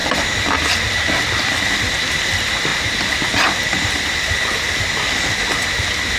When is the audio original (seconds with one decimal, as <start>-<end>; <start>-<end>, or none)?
0.0-6.2